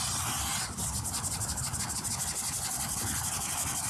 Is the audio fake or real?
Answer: real